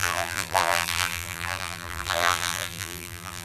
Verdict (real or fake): fake